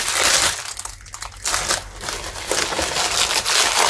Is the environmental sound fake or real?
real